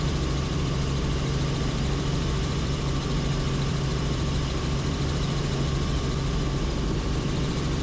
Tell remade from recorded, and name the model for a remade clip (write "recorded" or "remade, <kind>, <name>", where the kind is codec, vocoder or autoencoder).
remade, vocoder, BigVGAN v2